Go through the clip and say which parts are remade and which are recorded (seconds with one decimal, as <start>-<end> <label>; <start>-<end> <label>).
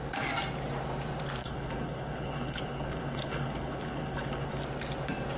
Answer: 0.0-1.4 recorded; 1.4-4.6 remade; 4.6-5.4 recorded